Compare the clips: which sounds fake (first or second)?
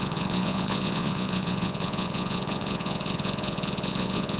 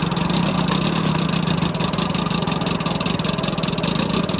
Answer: first